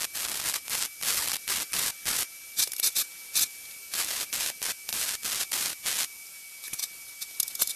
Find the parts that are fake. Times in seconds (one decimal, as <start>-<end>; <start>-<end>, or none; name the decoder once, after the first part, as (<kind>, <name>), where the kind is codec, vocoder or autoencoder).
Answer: 3.5-4.3 (vocoder, BigVGAN v2); 4.9-6.3